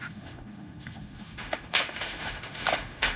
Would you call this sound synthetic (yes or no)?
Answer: yes